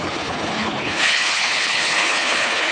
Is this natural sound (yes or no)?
no